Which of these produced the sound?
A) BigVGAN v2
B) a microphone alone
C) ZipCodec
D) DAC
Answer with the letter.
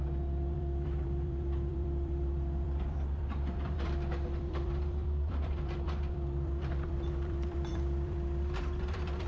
A